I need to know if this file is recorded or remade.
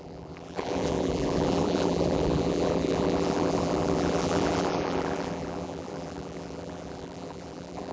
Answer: remade